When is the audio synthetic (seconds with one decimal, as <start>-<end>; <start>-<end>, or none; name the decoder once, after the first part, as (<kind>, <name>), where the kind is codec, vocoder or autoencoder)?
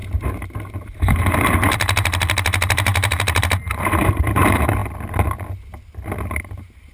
0.0-4.8 (vocoder, BigVGAN v2); 6.3-6.9